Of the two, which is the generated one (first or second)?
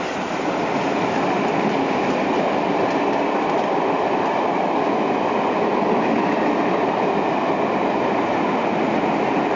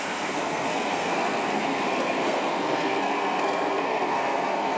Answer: second